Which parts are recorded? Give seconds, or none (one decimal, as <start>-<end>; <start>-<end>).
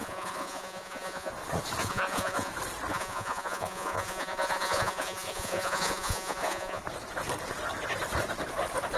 1.3-1.8; 2.5-2.9; 6.8-9.0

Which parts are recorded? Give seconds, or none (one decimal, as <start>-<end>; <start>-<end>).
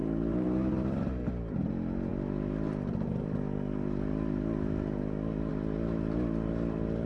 0.7-7.1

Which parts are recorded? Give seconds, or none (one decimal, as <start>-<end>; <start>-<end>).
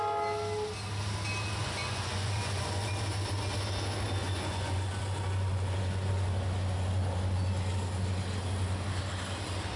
0.0-1.6; 2.9-4.2; 5.0-5.5; 6.1-9.8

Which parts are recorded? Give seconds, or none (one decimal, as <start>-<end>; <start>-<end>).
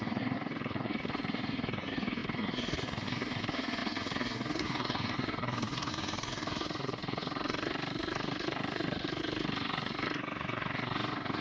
none